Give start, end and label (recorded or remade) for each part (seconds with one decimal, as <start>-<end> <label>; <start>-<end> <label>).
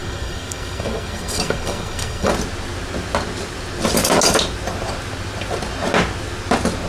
0.0-2.3 remade; 2.3-6.9 recorded